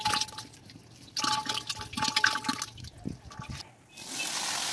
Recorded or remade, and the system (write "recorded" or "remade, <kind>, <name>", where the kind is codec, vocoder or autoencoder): recorded